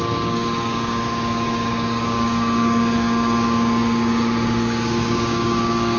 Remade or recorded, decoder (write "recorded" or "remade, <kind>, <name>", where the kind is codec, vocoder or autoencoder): remade, codec, DAC